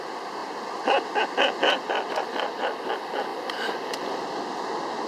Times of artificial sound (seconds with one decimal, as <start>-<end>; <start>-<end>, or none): none